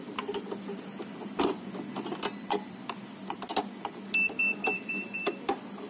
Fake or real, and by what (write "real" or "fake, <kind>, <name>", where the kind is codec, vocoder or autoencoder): fake, vocoder, BigVGAN v2